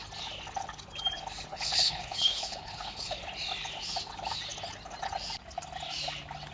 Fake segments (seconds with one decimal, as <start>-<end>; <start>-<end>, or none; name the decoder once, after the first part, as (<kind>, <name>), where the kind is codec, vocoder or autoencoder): 1.5-3.2 (codec, HILCodec)